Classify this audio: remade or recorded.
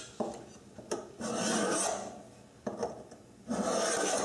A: recorded